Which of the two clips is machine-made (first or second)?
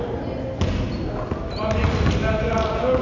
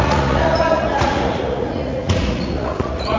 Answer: second